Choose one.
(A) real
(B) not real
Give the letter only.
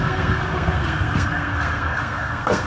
B